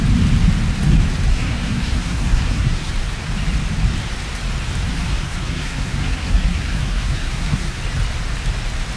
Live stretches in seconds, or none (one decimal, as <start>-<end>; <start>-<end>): 0.0-1.3; 2.9-4.9; 7.8-9.0